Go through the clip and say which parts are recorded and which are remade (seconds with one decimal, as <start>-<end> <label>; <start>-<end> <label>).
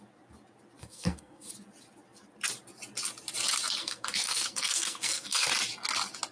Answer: 0.0-0.8 recorded; 0.8-1.5 remade; 1.5-3.8 recorded; 3.8-5.5 remade; 5.5-6.3 recorded